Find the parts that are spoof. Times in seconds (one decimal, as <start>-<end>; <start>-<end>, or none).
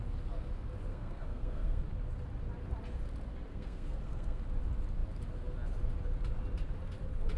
0.9-1.8; 3.5-4.4